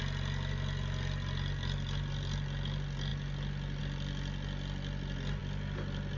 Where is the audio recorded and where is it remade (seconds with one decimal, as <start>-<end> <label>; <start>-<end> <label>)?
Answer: 0.0-6.2 recorded